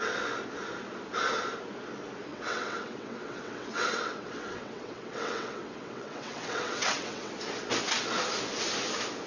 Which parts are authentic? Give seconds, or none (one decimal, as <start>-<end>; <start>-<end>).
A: 0.0-2.3; 7.3-9.3